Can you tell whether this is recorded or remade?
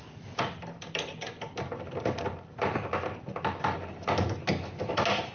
recorded